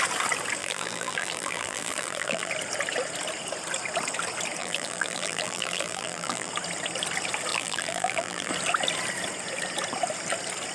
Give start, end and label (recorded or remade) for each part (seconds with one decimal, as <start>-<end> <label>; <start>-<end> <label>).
0.0-0.6 recorded; 0.6-2.5 remade; 2.5-4.6 recorded; 4.6-6.5 remade; 6.5-7.5 recorded; 7.5-8.5 remade; 8.5-10.7 recorded